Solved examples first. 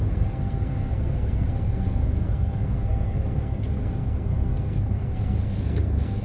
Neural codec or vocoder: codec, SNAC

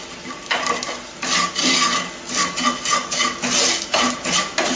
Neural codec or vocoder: none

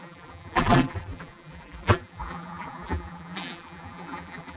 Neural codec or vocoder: vocoder, BigVGAN v2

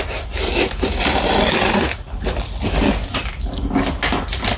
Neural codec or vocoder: none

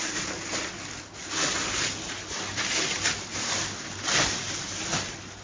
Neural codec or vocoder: none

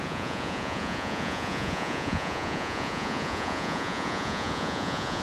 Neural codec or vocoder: vocoder, Vocos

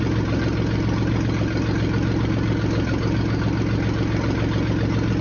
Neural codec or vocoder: none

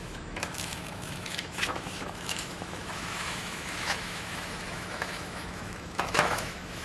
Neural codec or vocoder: autoencoder, DAC-VAE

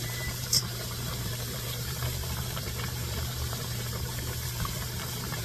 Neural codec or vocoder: vocoder, BigVGAN v2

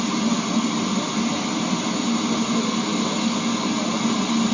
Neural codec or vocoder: none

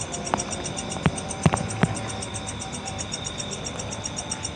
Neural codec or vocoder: vocoder, BigVGAN v2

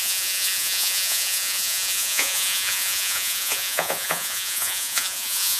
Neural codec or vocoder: vocoder, Vocos